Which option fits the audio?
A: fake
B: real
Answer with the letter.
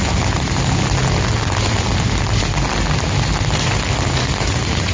B